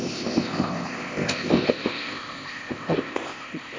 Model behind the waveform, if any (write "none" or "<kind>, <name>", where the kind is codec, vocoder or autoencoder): codec, ZipCodec